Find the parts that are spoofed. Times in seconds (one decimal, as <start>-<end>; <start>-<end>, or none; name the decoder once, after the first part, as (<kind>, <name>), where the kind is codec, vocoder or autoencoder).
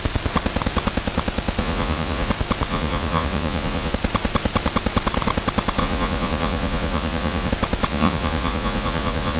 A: 1.6-2.3 (vocoder, Vocos); 2.7-3.9; 5.8-7.5; 7.9-9.4